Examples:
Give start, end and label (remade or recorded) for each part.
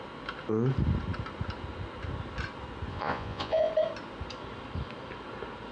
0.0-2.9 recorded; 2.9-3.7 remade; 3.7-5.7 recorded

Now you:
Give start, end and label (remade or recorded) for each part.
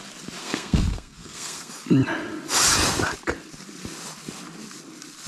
0.0-0.4 recorded; 0.4-1.7 remade; 1.7-5.3 recorded